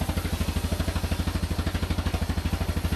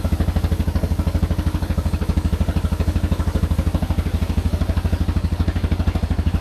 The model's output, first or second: second